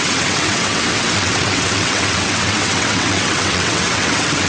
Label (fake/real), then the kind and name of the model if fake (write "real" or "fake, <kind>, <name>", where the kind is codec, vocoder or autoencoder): fake, vocoder, WaveNeXt